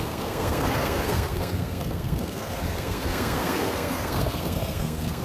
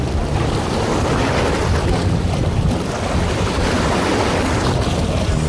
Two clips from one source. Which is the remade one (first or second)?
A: first